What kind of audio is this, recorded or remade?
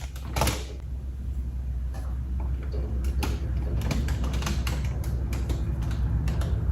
recorded